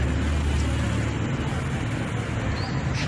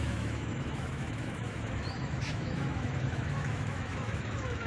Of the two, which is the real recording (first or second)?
first